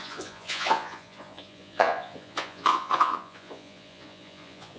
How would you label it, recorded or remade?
remade